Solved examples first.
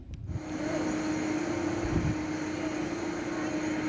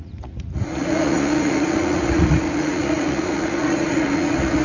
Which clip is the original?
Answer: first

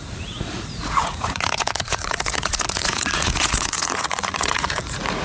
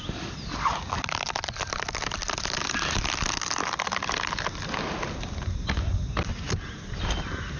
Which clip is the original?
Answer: second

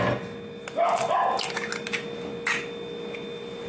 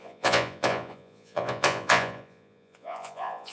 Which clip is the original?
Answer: first